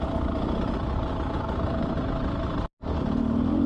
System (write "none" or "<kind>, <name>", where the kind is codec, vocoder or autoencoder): none